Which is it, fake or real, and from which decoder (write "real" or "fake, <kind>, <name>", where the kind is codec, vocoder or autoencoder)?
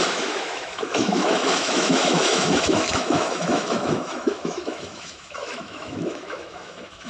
fake, autoencoder, DAC-VAE